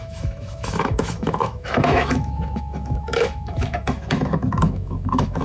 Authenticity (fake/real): fake